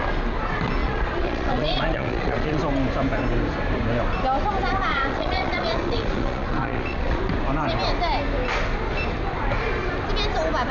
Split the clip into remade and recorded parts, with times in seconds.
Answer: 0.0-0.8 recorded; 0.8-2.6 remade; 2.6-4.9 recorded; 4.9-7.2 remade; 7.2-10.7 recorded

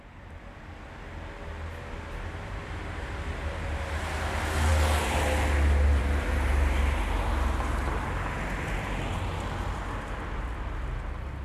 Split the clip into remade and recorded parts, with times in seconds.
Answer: 0.0-11.4 recorded

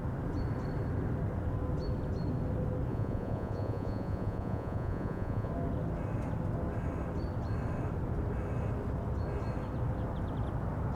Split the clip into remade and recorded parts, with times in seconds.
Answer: 0.0-2.9 recorded; 2.9-5.5 remade; 5.5-10.9 recorded

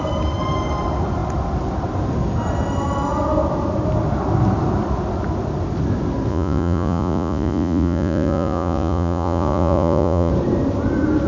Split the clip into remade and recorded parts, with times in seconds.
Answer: 0.0-6.3 recorded; 6.3-10.3 remade; 10.3-11.3 recorded

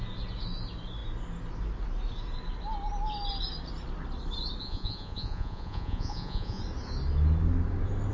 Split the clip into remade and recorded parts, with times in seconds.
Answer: 0.0-4.6 recorded; 4.6-6.6 remade; 6.6-8.1 recorded

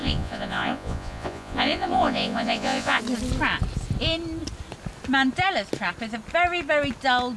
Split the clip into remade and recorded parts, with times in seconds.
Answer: 0.0-3.0 remade; 3.0-7.4 recorded

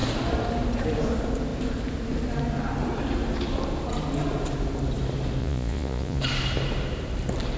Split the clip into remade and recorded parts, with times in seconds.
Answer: 0.0-5.4 recorded; 5.4-6.2 remade; 6.2-7.6 recorded

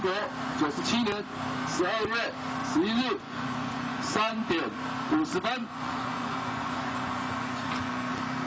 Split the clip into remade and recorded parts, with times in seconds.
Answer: 0.0-2.6 recorded; 2.6-4.5 remade; 4.5-5.6 recorded; 5.6-8.1 remade; 8.1-8.5 recorded